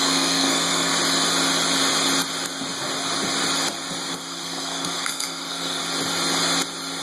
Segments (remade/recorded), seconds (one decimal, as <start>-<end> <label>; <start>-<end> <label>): 0.0-0.9 remade; 0.9-4.1 recorded; 4.1-5.8 remade; 5.8-7.0 recorded